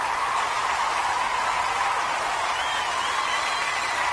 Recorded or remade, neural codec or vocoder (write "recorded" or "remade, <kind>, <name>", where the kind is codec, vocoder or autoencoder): recorded